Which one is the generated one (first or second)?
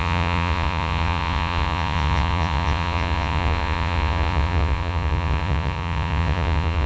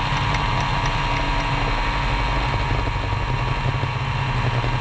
first